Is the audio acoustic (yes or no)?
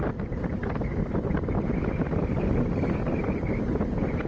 yes